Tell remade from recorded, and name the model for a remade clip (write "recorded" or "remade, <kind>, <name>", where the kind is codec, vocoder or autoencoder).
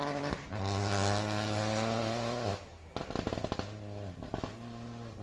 recorded